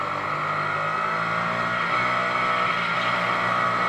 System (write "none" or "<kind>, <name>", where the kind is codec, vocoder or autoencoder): none